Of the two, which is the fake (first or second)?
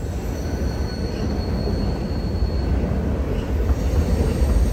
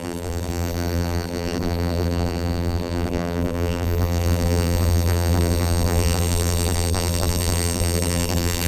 second